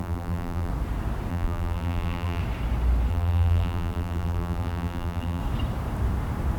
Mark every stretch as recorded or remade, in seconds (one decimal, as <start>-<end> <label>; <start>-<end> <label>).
0.0-0.7 remade; 0.7-1.3 recorded; 1.3-2.4 remade; 2.4-3.1 recorded; 3.1-5.4 remade; 5.4-6.6 recorded